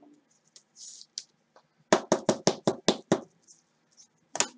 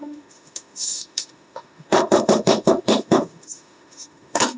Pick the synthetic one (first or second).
second